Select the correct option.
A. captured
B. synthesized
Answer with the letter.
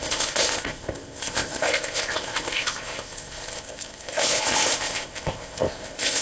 B